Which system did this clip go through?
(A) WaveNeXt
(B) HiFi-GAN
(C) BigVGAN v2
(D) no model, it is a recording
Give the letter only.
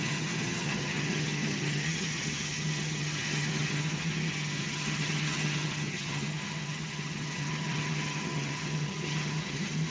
B